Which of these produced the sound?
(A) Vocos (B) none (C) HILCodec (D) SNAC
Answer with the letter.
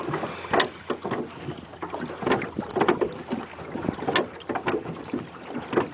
B